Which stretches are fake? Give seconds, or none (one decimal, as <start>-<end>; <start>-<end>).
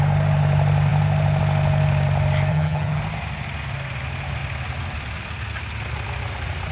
2.5-3.0